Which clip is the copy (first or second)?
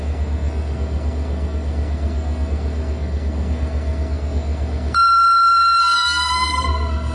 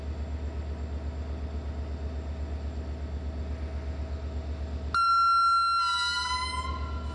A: first